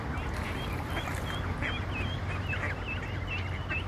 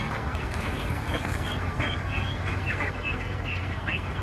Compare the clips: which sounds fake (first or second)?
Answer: second